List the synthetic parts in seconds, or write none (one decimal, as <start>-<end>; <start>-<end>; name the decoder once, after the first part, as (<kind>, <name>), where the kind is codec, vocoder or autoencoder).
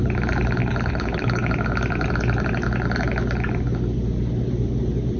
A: 0.6-1.5 (codec, HILCodec)